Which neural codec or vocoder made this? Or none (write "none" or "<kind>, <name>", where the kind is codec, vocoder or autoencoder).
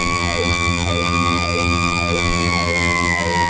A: vocoder, BigVGAN v2